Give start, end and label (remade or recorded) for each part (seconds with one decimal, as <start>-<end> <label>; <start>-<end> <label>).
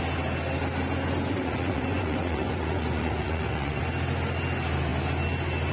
0.0-1.3 recorded; 1.3-3.8 remade; 3.8-5.7 recorded